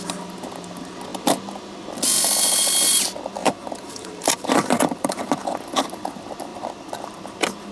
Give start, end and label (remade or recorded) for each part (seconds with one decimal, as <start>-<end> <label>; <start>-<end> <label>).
0.0-3.4 recorded; 3.4-5.2 remade; 5.2-7.7 recorded